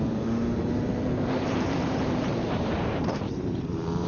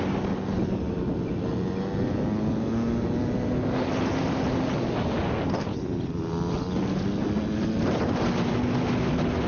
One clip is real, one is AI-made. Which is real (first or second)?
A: second